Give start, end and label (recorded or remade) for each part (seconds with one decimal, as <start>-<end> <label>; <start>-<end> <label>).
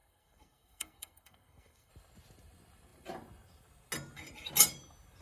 0.0-1.9 remade; 1.9-5.2 recorded